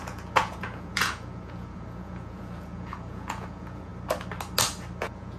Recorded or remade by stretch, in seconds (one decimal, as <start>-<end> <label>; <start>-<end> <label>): 0.0-3.9 remade; 3.9-5.0 recorded; 5.0-5.4 remade